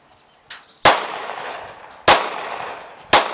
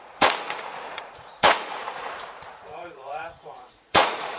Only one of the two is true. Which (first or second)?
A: first